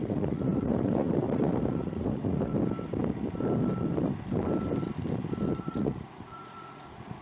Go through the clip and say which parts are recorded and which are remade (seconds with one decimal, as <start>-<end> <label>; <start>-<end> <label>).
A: 0.0-2.5 remade; 2.5-5.6 recorded; 5.6-7.2 remade